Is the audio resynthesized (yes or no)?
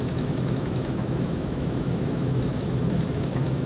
yes